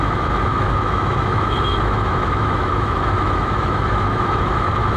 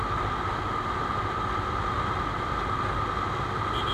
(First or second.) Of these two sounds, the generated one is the first